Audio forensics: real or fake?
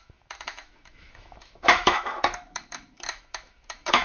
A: fake